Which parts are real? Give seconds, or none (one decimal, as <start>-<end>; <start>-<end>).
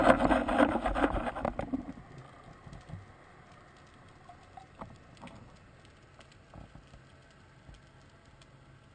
0.0-8.9